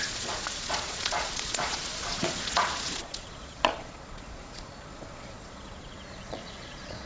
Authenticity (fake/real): fake